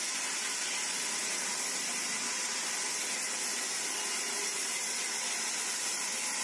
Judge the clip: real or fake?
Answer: real